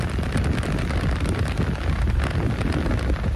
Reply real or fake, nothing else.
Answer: real